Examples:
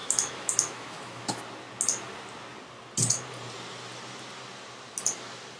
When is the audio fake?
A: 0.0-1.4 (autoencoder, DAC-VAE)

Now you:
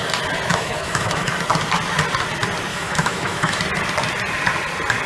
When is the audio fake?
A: 0.5-1.3 (autoencoder, DAC-VAE); 2.7-3.6

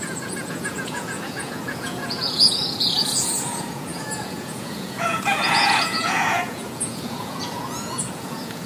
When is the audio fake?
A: 0.0-8.7 (vocoder, Vocos)

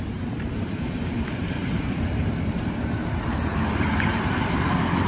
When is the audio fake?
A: 0.0-3.5 (vocoder, BigVGAN v2); 4.3-5.1

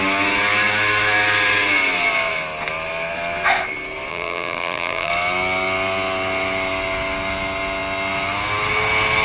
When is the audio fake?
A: 4.1-5.1 (vocoder, BigVGAN v2)

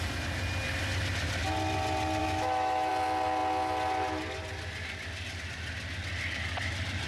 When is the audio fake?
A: 2.2-2.9 (autoencoder, DAC-VAE)